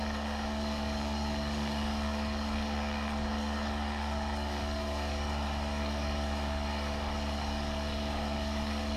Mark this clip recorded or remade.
remade